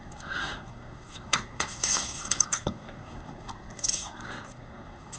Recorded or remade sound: remade